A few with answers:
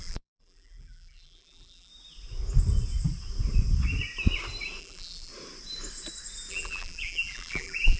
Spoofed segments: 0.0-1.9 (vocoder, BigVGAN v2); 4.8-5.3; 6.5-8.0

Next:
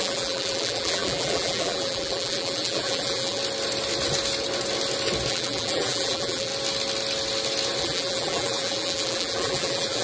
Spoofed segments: 0.0-3.4 (vocoder, BigVGAN v2); 5.3-6.5; 7.8-10.0

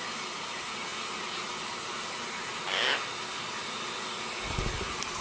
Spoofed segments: none

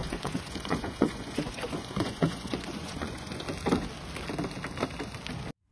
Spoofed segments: 0.0-3.4 (vocoder, Vocos)

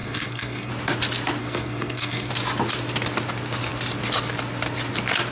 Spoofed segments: 0.0-0.7 (codec, SNAC); 1.4-2.3

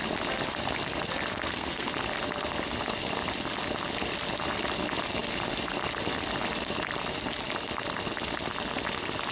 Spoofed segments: 1.3-1.9 (codec, SNAC)